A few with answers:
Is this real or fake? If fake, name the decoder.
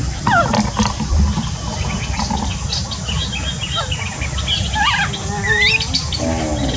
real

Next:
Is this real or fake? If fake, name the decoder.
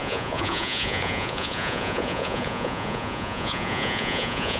fake, vocoder, Vocos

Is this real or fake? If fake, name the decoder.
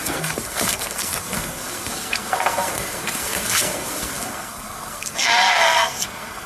fake, codec, SNAC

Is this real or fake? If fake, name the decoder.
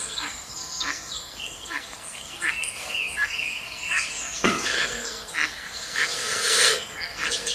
fake, codec, SNAC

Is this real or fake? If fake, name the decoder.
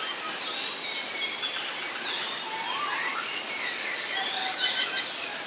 real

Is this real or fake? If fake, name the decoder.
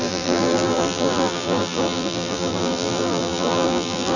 fake, vocoder, BigVGAN v2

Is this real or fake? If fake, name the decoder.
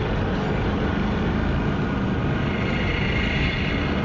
real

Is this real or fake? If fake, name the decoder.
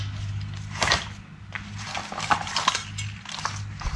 real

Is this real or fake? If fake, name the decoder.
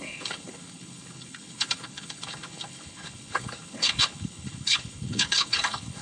fake, codec, HILCodec